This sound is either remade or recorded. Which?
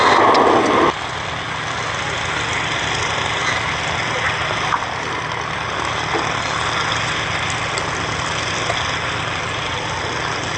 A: recorded